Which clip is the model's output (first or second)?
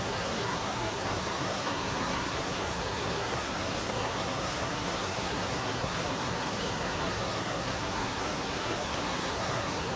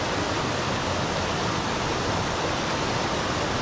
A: first